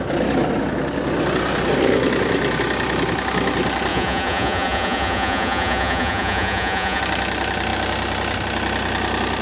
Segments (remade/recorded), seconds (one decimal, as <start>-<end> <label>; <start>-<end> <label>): 0.0-3.9 recorded; 3.9-7.0 remade; 7.0-9.4 recorded